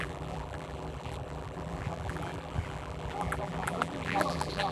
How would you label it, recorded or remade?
remade